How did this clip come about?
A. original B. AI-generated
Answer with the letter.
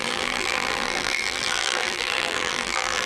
B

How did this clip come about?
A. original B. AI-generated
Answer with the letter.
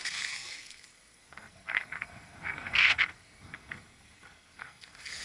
B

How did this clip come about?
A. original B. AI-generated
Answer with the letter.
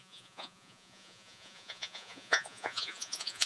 B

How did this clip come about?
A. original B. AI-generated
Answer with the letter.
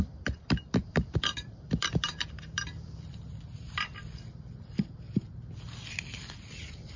B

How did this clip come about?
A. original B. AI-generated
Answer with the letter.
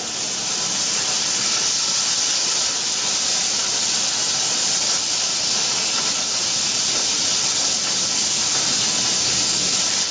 A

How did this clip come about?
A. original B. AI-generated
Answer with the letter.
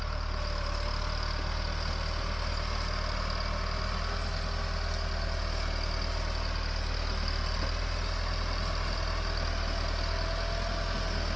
A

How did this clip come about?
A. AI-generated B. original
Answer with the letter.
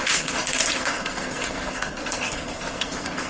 A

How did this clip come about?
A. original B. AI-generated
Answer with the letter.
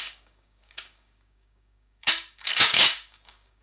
B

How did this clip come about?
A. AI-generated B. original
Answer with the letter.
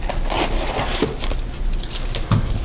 B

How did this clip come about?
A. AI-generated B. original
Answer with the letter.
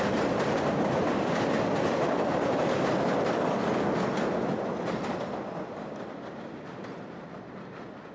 B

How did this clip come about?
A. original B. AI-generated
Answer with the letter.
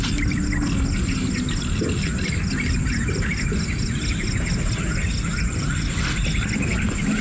A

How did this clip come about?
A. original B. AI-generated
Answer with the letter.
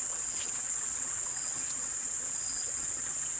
B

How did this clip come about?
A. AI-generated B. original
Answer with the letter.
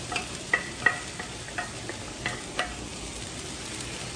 A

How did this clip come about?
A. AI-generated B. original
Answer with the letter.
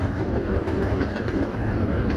A